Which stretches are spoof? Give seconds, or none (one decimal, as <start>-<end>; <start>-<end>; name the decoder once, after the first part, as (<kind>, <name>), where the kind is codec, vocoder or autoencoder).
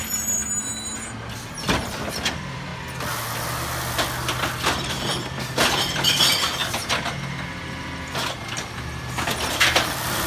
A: 0.0-0.4 (vocoder, BigVGAN v2); 2.3-2.7; 3.9-6.6; 8.3-10.3